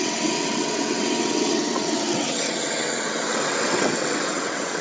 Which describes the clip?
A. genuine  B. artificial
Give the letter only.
B